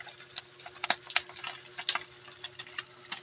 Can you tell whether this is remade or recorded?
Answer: recorded